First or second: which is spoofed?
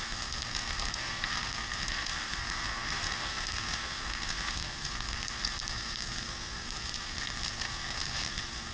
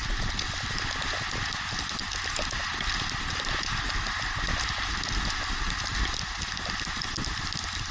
first